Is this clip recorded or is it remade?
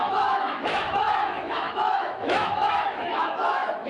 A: remade